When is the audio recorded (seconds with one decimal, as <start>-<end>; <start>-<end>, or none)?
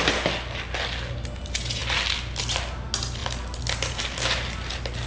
0.0-5.1